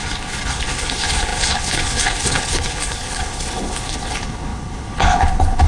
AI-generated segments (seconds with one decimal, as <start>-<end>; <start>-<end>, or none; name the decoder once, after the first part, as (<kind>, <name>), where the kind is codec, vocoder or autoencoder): 0.0-5.7 (codec, HILCodec)